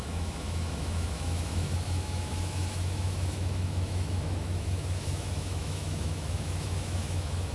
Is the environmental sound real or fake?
fake